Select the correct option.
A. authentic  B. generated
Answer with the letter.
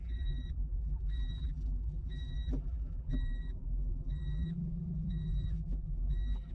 B